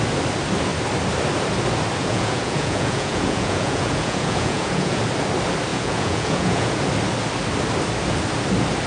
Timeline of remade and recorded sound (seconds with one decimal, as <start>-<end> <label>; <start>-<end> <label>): 0.0-2.0 recorded; 2.0-5.0 remade; 5.0-5.7 recorded; 5.7-6.8 remade; 6.8-8.9 recorded